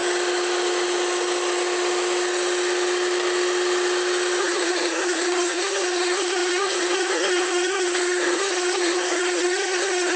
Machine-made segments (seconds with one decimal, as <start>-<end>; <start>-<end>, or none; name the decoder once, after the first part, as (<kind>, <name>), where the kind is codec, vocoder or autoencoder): 4.4-10.2 (codec, SNAC)